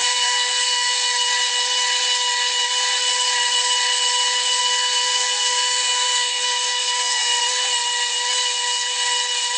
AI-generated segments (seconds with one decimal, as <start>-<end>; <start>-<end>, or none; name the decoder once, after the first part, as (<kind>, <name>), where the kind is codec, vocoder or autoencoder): 0.0-1.1 (codec, SNAC); 4.6-7.4

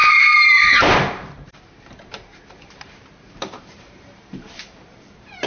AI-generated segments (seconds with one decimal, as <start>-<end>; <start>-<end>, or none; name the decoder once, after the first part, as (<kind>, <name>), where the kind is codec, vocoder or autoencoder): 0.0-5.5 (vocoder, BigVGAN v2)

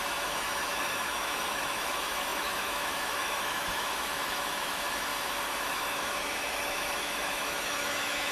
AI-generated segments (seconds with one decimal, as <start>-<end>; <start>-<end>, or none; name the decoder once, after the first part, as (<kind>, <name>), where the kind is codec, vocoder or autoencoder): 0.0-5.1 (autoencoder, DAC-VAE); 5.7-8.3

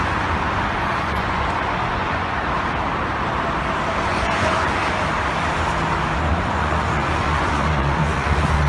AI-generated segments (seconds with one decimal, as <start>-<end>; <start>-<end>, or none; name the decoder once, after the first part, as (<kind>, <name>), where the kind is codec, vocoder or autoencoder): 0.0-2.4 (vocoder, Vocos); 4.0-4.8; 6.3-8.7

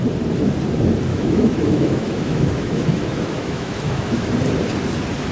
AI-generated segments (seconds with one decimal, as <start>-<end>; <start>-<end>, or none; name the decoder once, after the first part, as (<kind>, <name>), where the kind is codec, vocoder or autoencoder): 1.1-4.3 (autoencoder, DAC-VAE)

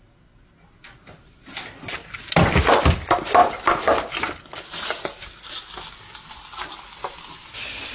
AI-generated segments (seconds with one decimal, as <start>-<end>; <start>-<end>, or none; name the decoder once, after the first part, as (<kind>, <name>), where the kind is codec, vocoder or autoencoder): none